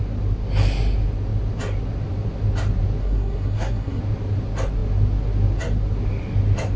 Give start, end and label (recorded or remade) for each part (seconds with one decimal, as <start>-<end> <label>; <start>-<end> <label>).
0.0-3.0 recorded; 3.0-4.0 remade; 4.0-6.8 recorded